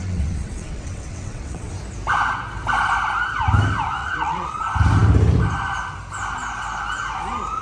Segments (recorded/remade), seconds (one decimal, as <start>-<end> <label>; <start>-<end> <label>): 0.0-1.7 remade; 1.7-4.0 recorded; 4.0-4.6 remade; 4.6-7.6 recorded